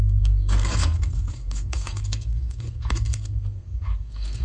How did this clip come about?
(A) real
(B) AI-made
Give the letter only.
B